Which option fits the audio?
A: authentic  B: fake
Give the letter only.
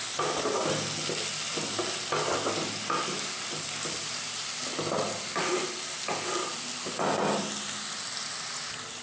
A